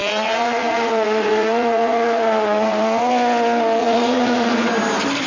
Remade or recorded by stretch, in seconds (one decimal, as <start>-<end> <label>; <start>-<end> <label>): 0.0-3.1 remade; 3.1-3.8 recorded; 3.8-4.7 remade; 4.7-5.3 recorded